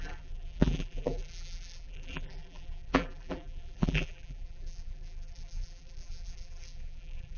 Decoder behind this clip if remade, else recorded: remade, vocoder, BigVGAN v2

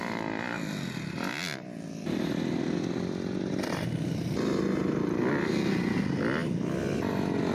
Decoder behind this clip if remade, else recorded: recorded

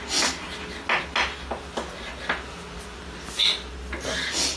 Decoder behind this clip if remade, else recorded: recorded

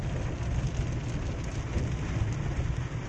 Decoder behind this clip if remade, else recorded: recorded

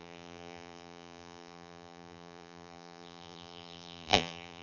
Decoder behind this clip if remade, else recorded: remade, vocoder, BigVGAN v2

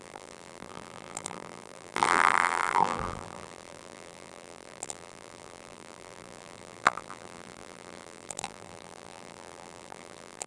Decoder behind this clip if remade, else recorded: remade, vocoder, BigVGAN v2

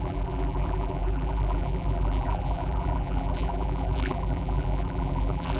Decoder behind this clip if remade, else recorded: remade, vocoder, BigVGAN v2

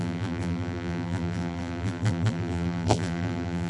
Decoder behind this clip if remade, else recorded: remade, vocoder, BigVGAN v2